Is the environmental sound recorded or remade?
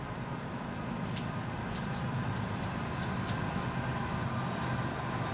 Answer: recorded